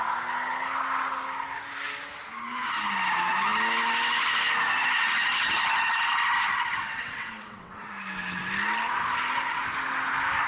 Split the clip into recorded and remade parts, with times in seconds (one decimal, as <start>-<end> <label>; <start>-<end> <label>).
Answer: 0.0-6.8 recorded; 6.8-7.9 remade; 7.9-10.5 recorded